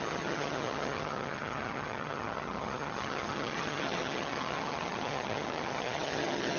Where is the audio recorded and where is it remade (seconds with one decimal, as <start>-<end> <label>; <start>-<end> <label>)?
0.0-6.6 remade